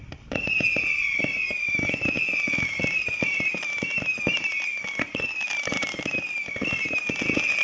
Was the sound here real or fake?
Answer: real